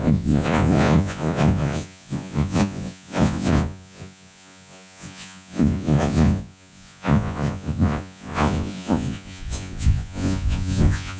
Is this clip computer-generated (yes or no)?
yes